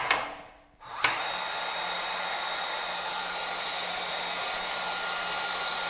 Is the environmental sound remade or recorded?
recorded